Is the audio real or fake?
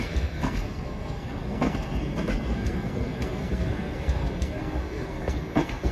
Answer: fake